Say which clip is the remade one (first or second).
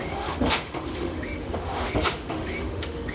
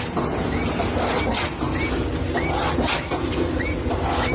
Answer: first